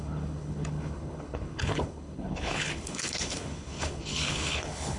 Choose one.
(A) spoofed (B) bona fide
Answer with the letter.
A